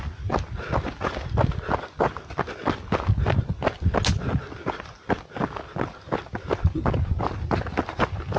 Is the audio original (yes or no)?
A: yes